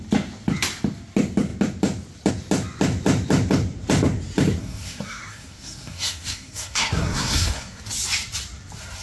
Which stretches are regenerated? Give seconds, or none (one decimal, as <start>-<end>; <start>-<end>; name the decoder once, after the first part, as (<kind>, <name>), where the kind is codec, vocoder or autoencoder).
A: 4.6-7.8 (codec, SNAC)